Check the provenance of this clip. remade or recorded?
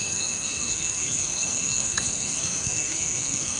remade